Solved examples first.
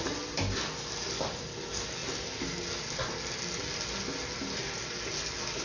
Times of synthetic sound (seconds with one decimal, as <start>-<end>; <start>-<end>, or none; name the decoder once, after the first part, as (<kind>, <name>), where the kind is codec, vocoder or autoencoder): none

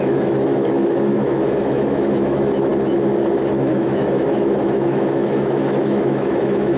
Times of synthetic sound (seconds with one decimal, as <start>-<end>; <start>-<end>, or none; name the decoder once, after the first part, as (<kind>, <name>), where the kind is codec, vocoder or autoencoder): 0.0-2.7 (autoencoder, DAC-VAE); 3.5-6.8

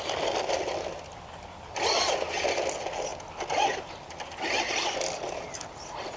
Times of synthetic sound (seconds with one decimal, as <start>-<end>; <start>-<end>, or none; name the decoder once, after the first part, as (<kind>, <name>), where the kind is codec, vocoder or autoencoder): none

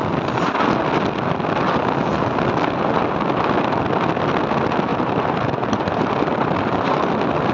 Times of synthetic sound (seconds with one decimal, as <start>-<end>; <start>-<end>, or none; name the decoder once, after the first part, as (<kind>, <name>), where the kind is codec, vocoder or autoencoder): 4.9-7.1 (vocoder, BigVGAN v2)

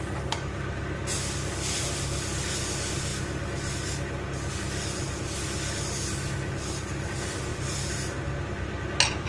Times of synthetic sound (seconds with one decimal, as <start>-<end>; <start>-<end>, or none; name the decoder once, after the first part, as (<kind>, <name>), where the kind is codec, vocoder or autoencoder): none